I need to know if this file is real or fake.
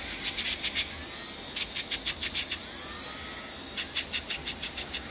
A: real